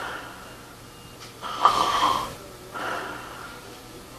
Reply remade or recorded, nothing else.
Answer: recorded